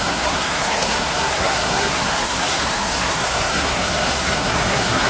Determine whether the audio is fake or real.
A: fake